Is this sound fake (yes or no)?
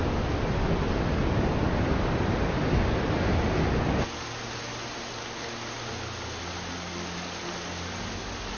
no